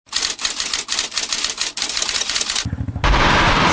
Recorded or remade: recorded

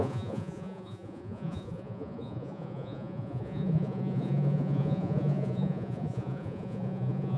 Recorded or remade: remade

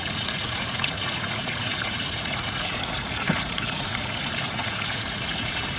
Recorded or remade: remade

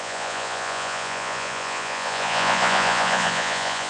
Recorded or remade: remade